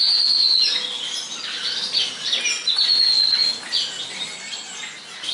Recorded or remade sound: recorded